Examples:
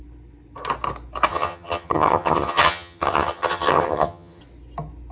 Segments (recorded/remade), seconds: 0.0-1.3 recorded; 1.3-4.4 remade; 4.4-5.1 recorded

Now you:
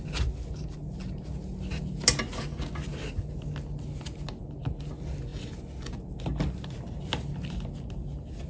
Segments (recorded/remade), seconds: 0.0-8.5 recorded

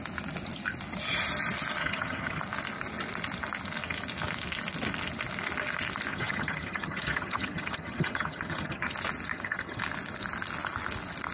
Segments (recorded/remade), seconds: 0.0-1.8 recorded; 1.8-2.4 remade; 2.4-6.1 recorded; 6.1-8.9 remade; 8.9-9.3 recorded; 9.3-9.8 remade; 9.8-11.3 recorded

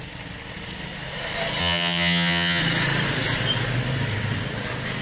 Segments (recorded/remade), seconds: 0.0-1.6 recorded; 1.6-2.6 remade; 2.6-5.0 recorded

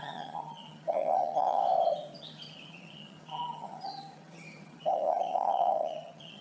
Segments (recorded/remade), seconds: 0.0-1.6 remade; 1.6-2.2 recorded; 2.2-6.4 remade